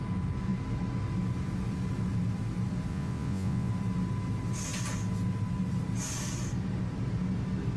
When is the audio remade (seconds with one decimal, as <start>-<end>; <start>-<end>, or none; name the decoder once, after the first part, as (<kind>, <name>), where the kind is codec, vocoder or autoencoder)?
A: 2.9-3.7 (vocoder, Vocos)